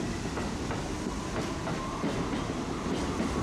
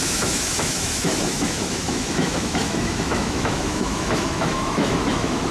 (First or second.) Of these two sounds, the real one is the first